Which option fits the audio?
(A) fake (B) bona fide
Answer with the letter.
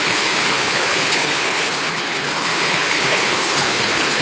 A